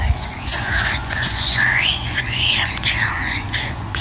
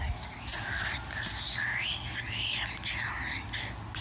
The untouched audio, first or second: second